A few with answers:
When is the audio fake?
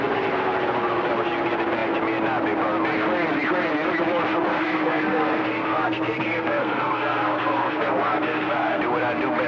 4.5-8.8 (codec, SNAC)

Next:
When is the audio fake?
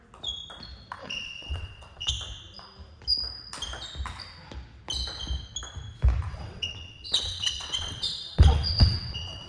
1.0-2.1 (vocoder, WaveNeXt); 6.3-9.5